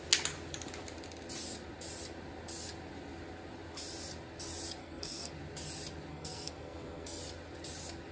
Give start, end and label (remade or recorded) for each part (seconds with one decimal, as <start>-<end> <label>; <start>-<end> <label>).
0.0-4.8 recorded; 4.8-5.3 remade; 5.3-6.1 recorded; 6.1-7.2 remade; 7.2-8.1 recorded